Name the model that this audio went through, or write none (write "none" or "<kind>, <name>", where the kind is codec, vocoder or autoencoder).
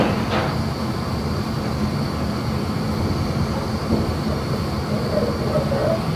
vocoder, BigVGAN v2